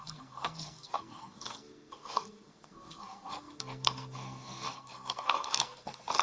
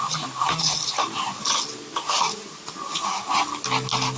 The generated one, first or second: first